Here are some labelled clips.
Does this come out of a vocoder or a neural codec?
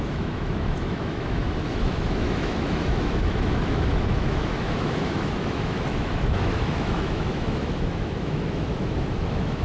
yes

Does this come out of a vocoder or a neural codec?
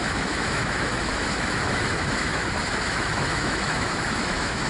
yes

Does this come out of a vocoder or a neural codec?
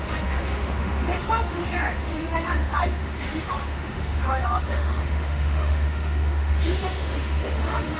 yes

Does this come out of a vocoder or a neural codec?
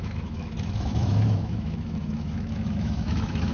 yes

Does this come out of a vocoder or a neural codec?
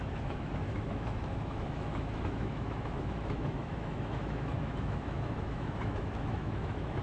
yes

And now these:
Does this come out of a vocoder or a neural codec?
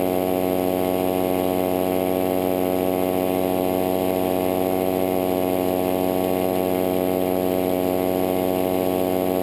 no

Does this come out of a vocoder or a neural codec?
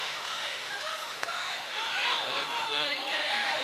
yes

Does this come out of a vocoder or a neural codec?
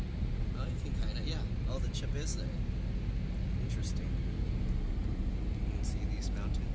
no